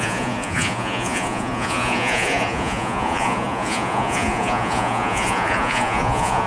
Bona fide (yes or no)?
no